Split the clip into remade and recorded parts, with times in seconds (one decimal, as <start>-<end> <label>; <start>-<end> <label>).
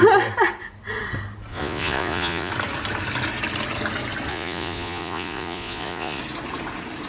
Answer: 0.0-1.5 recorded; 1.5-2.5 remade; 2.5-4.3 recorded; 4.3-6.2 remade; 6.2-7.1 recorded